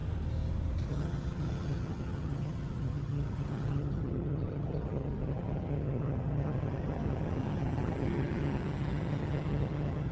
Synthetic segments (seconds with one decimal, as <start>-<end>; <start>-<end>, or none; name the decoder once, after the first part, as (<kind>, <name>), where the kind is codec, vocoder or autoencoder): 0.9-10.1 (vocoder, HiFi-GAN)